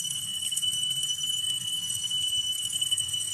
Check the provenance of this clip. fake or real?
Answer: fake